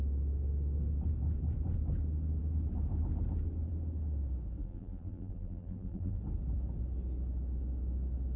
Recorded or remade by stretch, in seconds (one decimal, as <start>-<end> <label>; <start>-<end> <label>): 0.0-4.6 recorded; 4.6-6.2 remade; 6.2-8.4 recorded